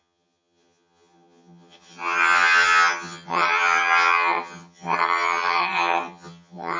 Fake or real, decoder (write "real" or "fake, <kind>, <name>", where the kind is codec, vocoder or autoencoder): fake, vocoder, HiFi-GAN